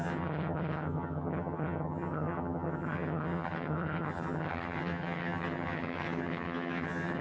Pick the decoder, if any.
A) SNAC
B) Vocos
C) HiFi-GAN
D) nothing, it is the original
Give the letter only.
C